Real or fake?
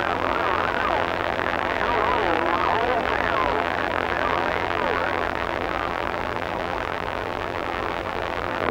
fake